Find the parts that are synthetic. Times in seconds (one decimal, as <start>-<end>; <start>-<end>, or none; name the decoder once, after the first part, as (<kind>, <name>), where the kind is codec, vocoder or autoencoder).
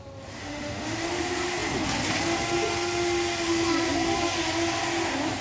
0.4-1.1 (autoencoder, DAC-VAE)